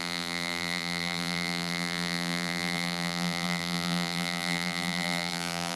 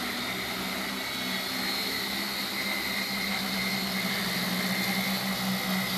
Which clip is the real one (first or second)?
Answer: second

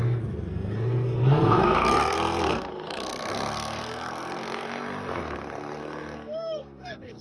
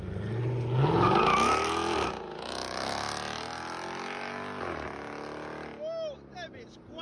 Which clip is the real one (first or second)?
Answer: second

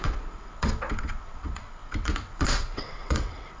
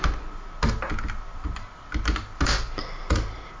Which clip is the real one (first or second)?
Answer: second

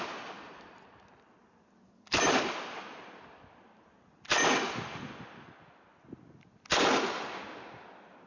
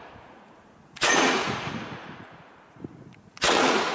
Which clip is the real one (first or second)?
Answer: first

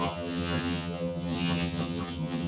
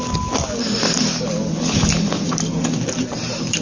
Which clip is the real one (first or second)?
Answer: second